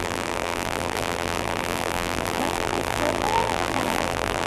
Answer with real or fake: fake